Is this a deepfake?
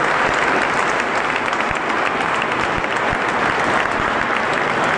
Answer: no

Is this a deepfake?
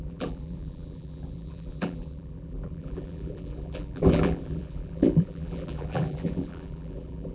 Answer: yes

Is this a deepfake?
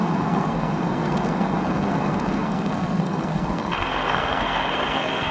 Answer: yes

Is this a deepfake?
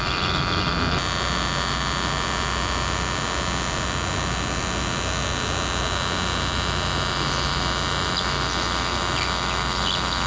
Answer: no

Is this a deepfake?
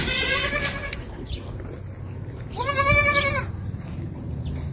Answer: no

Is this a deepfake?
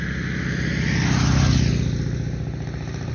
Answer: no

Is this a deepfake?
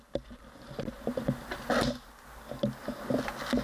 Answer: no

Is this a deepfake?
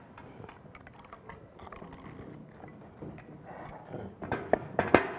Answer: no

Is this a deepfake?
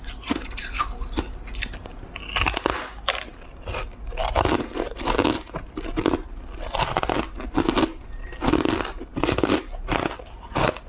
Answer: no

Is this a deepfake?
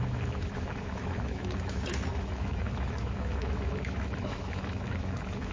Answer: yes